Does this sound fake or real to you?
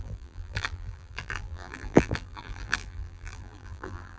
fake